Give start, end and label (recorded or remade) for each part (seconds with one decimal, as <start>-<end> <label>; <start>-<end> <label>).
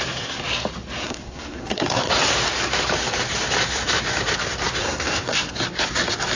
0.0-1.0 recorded; 1.0-2.1 remade; 2.1-4.8 recorded; 4.8-5.6 remade; 5.6-6.4 recorded